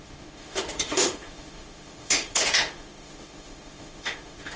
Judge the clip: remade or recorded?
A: remade